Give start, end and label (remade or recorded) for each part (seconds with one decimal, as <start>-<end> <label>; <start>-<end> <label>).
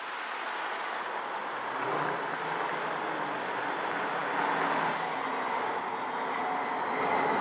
0.0-7.4 recorded